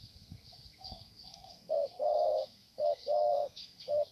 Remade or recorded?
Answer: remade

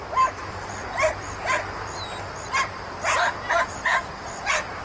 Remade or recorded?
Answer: recorded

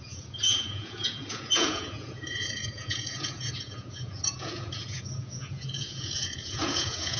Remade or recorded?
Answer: remade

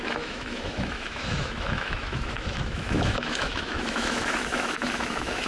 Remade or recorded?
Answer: remade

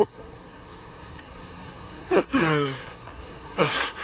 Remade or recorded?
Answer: remade